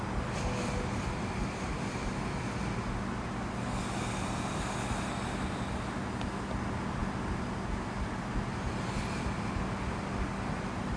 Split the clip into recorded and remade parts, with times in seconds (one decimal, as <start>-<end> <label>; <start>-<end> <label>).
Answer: 0.0-11.0 recorded